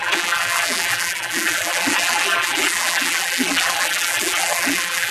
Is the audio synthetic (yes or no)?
yes